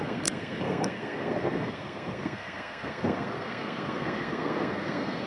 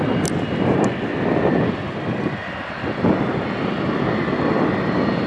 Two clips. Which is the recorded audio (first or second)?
second